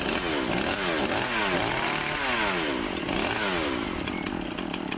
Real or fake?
real